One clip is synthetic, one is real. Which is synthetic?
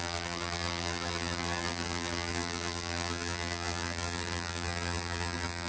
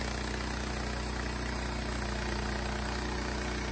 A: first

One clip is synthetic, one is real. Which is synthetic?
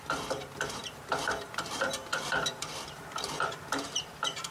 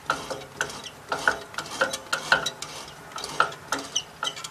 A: first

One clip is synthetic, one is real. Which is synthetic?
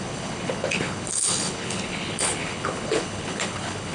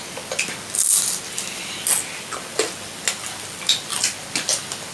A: first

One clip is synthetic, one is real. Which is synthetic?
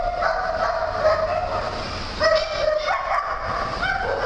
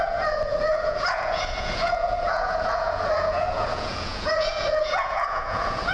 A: second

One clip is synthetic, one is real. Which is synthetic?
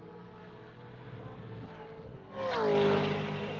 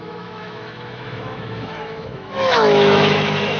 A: second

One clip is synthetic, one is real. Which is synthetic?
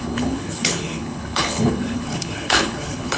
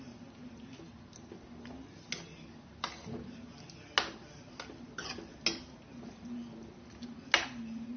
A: first